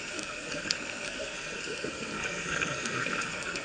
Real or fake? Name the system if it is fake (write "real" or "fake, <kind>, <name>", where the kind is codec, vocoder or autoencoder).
fake, codec, SNAC